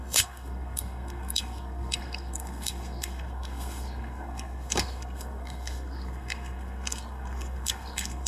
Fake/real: fake